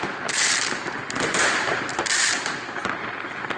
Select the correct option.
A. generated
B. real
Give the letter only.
B